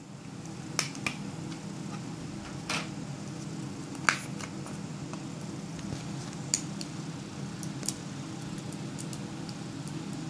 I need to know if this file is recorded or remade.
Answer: recorded